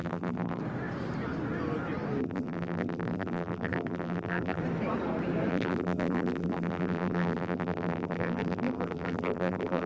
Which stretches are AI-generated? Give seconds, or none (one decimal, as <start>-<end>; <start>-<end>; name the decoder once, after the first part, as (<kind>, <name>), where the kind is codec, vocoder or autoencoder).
0.0-0.6 (vocoder, BigVGAN v2); 2.2-4.6; 5.5-9.9